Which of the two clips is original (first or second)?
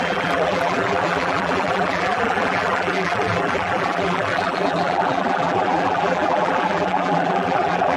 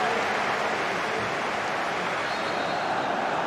second